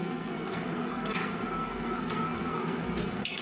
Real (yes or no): no